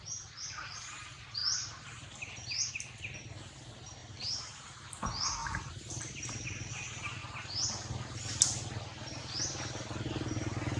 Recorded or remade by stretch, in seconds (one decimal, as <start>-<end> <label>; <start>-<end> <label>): 0.0-1.4 recorded; 1.4-2.7 remade; 2.7-4.0 recorded; 4.0-4.9 remade; 4.9-5.4 recorded; 5.4-6.0 remade; 6.0-10.8 recorded